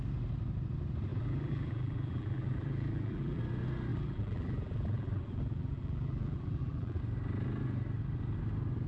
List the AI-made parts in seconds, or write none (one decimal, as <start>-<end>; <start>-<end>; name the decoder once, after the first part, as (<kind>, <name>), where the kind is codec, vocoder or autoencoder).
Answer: 1.1-3.4 (vocoder, BigVGAN v2); 3.9-7.0